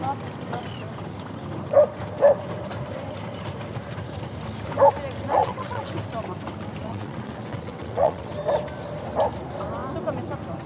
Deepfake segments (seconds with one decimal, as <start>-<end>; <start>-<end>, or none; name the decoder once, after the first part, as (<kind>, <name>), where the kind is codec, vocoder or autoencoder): 5.3-5.9 (vocoder, WaveNeXt); 6.8-8.3